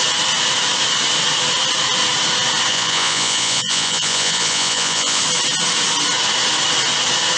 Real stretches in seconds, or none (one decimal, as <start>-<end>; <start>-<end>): 0.0-2.7; 5.2-7.4